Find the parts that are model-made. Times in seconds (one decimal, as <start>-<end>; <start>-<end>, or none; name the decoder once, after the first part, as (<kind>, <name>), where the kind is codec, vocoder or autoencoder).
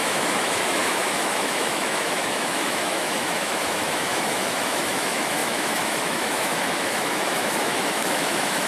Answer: 0.0-8.7 (autoencoder, DAC-VAE)